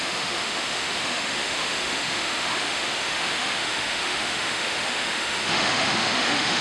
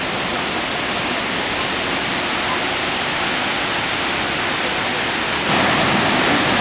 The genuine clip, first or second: second